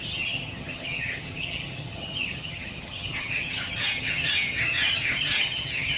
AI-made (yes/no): yes